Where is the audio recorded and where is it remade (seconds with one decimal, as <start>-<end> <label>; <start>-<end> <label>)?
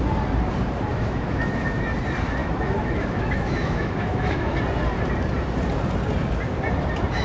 0.0-0.9 recorded; 0.9-1.7 remade; 1.7-2.4 recorded; 2.4-4.6 remade; 4.6-7.2 recorded